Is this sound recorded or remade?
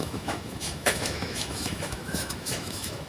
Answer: remade